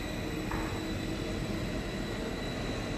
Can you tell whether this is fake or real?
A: real